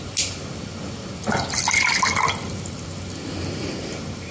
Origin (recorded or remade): recorded